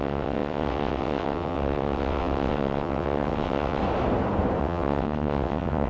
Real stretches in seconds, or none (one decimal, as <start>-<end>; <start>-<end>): 3.8-4.6